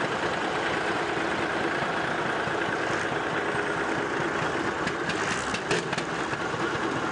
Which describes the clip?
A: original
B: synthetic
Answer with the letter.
A